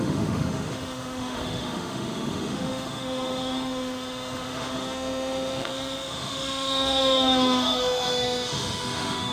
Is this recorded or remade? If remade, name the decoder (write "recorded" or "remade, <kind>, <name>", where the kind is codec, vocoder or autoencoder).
remade, autoencoder, DAC-VAE